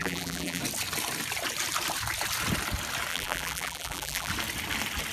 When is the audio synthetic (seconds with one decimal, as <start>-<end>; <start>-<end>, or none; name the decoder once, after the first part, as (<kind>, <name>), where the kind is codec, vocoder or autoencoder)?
0.0-0.6 (vocoder, BigVGAN v2); 3.1-4.3